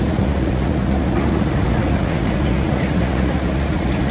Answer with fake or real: fake